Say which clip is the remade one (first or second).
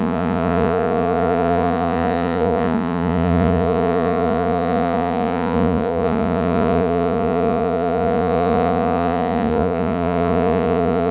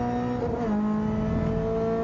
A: first